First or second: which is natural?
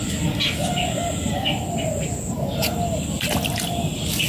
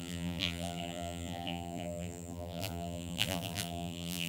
first